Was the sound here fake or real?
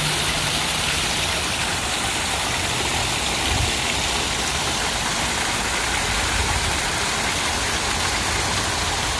real